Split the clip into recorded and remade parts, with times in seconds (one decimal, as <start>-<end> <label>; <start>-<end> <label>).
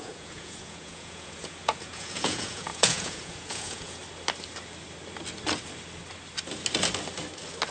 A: 0.0-4.0 remade; 4.0-7.7 recorded